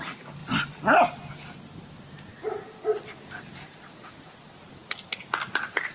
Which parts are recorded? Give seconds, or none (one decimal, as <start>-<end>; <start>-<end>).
0.0-5.9